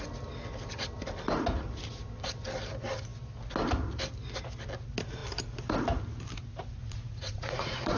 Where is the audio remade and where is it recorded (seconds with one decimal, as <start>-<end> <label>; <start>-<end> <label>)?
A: 0.0-6.8 recorded; 6.8-8.0 remade